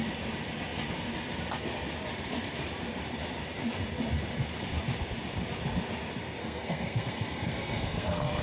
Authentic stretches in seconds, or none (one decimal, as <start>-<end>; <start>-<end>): 0.0-6.4